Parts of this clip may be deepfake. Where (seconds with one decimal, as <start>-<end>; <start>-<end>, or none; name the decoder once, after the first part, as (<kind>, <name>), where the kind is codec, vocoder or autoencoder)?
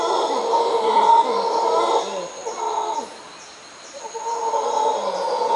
none